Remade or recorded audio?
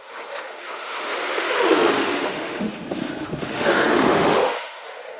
remade